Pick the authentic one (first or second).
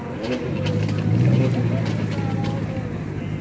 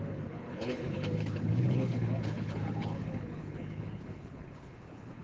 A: first